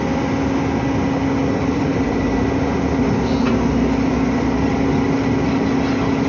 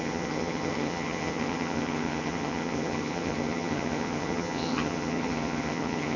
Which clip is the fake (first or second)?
second